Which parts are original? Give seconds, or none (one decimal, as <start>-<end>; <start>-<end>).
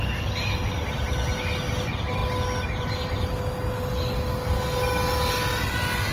0.0-6.1